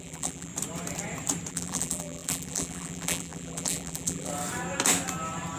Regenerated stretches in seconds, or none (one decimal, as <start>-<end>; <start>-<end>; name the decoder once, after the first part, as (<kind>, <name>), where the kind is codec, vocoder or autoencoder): 0.0-0.5 (vocoder, BigVGAN v2); 1.5-4.3